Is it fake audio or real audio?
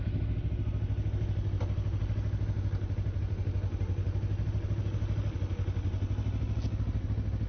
real